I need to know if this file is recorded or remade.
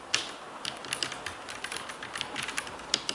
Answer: recorded